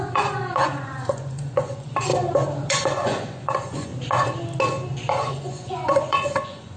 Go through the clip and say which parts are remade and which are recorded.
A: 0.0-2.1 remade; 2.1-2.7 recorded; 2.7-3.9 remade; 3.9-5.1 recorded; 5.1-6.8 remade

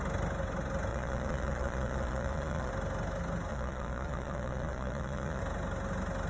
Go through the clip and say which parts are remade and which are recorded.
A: 0.0-0.9 recorded; 0.9-2.7 remade; 2.7-3.5 recorded; 3.5-5.4 remade; 5.4-6.3 recorded

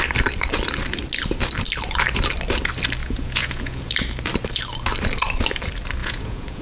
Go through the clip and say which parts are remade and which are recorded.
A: 0.0-3.0 recorded; 3.0-3.9 remade; 3.9-6.0 recorded; 6.0-6.6 remade

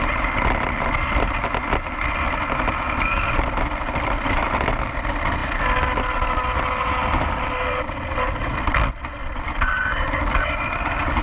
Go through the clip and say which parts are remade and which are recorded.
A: 0.0-11.2 recorded

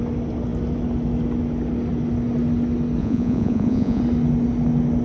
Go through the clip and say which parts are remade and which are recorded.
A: 0.0-3.0 recorded; 3.0-4.0 remade; 4.0-5.0 recorded

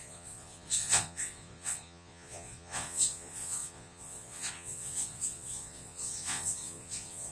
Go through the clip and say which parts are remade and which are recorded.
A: 0.0-7.3 remade